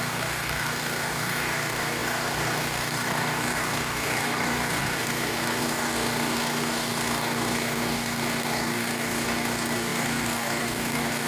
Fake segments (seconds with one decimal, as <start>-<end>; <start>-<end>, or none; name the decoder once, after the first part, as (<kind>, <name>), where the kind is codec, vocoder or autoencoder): 0.0-11.3 (codec, DAC)

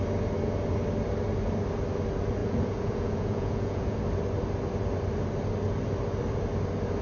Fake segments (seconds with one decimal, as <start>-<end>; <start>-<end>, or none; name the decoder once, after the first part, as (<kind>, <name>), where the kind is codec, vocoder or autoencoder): 2.4-4.0 (vocoder, Vocos)

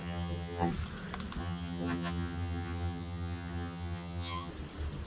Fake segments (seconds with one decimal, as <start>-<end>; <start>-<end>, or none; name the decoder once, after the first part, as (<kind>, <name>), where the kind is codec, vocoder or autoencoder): 0.0-0.7 (vocoder, HiFi-GAN); 1.4-4.5

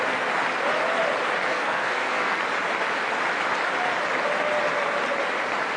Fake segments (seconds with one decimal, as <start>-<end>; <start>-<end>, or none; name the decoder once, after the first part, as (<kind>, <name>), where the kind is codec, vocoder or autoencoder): 1.5-2.4 (codec, SNAC)

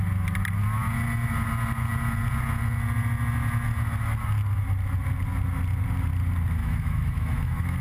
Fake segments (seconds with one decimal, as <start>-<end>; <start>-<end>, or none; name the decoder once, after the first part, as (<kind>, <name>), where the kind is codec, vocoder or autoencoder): 6.6-7.8 (autoencoder, DAC-VAE)